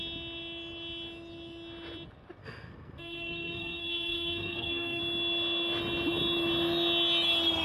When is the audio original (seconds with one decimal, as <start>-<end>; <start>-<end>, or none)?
0.0-2.4; 5.0-7.6